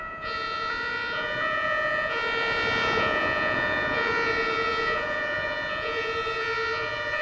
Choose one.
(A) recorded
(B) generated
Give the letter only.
B